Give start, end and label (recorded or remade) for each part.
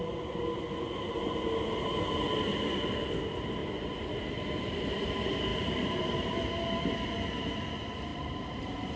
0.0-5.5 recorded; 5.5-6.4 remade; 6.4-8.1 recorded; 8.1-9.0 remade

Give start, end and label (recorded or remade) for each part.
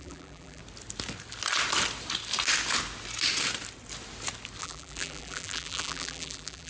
0.0-0.6 remade; 0.6-4.6 recorded; 4.6-6.7 remade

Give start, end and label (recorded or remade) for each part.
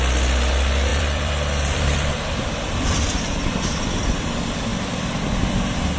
0.0-0.9 recorded; 0.9-4.0 remade; 4.0-4.7 recorded; 4.7-5.3 remade; 5.3-6.0 recorded